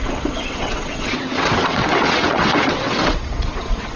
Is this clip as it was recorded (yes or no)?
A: no